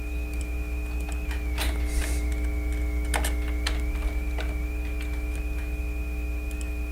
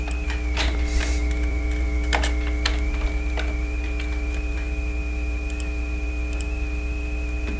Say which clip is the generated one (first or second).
second